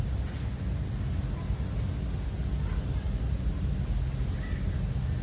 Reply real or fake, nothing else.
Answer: real